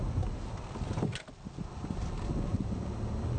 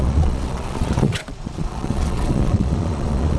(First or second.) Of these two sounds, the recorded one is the first